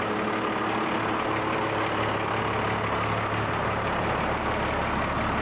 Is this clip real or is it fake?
real